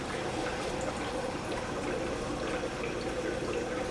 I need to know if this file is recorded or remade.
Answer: recorded